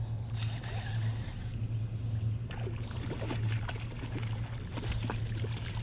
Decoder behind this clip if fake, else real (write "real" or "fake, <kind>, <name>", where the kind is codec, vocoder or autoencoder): real